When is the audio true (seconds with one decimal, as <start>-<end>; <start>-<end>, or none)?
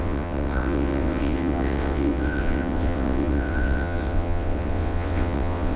none